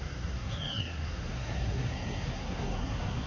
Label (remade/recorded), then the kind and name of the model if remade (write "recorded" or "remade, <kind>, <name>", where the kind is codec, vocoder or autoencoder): remade, codec, SNAC